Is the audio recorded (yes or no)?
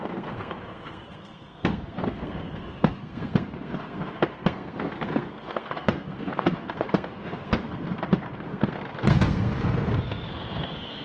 no